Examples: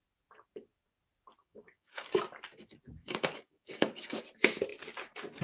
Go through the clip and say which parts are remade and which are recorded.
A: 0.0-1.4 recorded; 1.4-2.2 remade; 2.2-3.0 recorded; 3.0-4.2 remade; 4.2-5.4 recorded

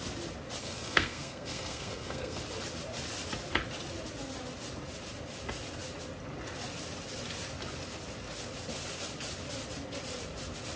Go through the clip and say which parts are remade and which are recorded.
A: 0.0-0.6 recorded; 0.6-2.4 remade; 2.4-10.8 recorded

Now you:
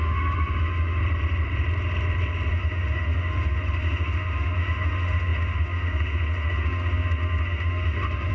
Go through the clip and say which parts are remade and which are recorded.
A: 0.0-1.0 remade; 1.0-2.5 recorded; 2.5-8.3 remade

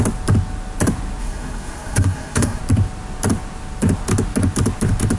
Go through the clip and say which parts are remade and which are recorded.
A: 0.0-1.2 recorded; 1.2-2.6 remade; 2.6-5.2 recorded

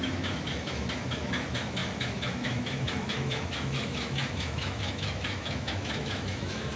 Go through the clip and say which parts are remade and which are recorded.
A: 0.0-6.8 remade

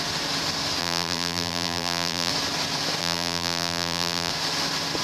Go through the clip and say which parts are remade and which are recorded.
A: 0.0-0.8 recorded; 0.8-2.3 remade; 2.3-3.0 recorded; 3.0-4.3 remade; 4.3-5.0 recorded

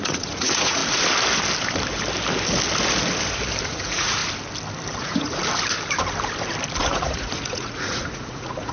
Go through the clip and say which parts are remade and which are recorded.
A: 0.0-0.8 remade; 0.8-3.6 recorded; 3.6-4.2 remade; 4.2-5.0 recorded; 5.0-5.4 remade; 5.4-6.8 recorded; 6.8-8.7 remade